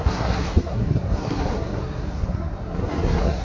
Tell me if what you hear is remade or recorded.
remade